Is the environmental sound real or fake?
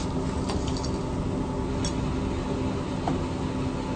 real